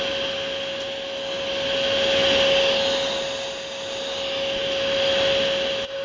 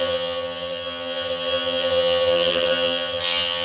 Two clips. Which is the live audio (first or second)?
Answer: first